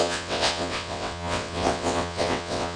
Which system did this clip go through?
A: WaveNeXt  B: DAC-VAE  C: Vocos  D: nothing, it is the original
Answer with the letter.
A